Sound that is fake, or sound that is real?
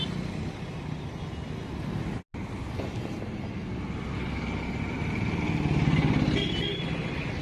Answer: real